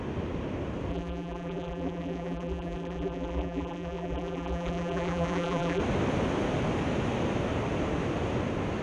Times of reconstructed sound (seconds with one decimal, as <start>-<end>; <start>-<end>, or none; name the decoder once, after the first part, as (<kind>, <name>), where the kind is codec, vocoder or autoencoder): 0.9-5.8 (vocoder, BigVGAN v2)